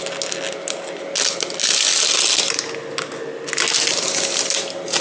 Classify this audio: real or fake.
real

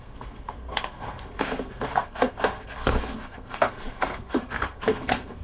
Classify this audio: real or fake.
fake